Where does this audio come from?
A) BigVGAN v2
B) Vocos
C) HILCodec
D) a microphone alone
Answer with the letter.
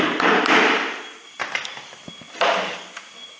D